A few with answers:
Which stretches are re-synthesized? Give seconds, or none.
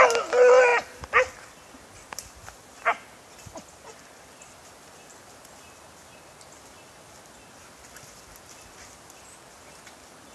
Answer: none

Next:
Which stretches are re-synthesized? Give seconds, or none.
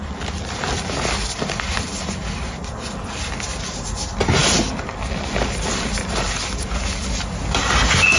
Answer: none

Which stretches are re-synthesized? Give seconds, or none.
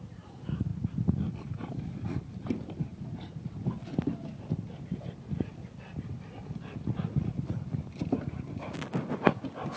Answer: 0.0-0.7; 2.2-2.9; 4.5-9.8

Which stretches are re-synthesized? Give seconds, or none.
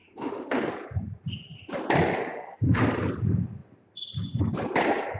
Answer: 0.0-0.7; 2.2-2.8